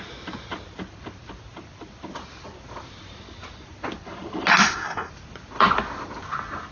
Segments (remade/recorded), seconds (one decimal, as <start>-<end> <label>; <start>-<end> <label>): 0.0-4.5 recorded; 4.5-5.1 remade; 5.1-6.7 recorded